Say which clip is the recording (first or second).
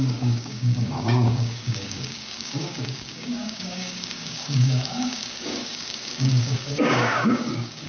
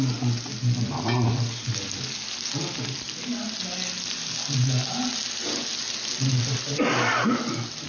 second